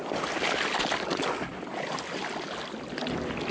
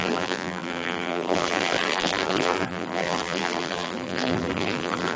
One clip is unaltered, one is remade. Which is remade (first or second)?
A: second